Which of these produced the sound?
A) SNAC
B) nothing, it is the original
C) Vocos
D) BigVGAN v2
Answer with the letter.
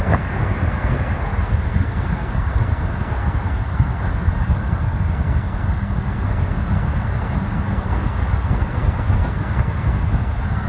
A